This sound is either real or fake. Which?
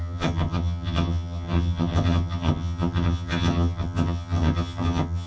fake